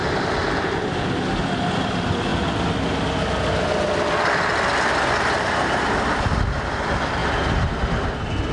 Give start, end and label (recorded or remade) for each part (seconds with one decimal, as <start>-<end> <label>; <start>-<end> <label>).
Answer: 0.0-8.5 recorded